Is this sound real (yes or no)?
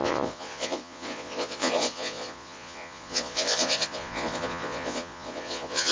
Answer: no